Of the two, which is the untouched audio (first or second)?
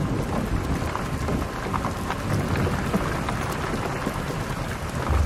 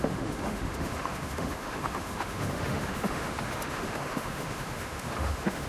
first